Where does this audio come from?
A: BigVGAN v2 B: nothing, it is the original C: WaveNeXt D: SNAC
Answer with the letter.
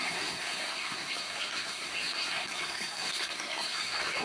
D